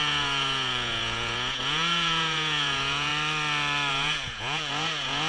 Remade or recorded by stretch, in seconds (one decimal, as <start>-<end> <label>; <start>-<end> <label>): 0.0-3.1 remade; 3.1-3.9 recorded; 3.9-5.3 remade